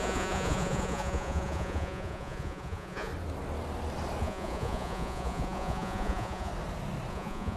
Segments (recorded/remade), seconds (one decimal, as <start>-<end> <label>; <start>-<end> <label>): 0.0-3.1 remade; 3.1-4.2 recorded; 4.2-6.5 remade; 6.5-7.1 recorded; 7.1-7.6 remade